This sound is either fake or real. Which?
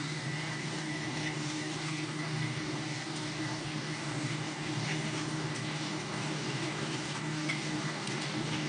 fake